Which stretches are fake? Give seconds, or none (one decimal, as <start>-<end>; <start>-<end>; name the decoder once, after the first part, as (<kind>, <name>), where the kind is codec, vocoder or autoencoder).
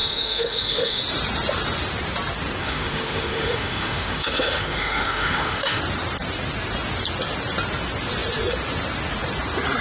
0.0-1.0 (autoencoder, DAC-VAE); 2.6-5.8